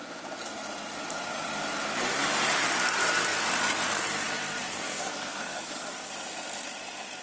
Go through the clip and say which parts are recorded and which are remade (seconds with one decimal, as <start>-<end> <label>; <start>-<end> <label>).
0.0-4.7 recorded; 4.7-6.1 remade; 6.1-7.2 recorded